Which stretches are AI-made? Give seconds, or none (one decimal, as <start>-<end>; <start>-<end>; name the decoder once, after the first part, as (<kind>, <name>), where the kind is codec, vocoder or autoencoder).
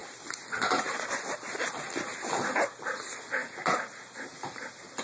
none